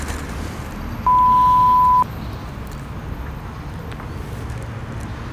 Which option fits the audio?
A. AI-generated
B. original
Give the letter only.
B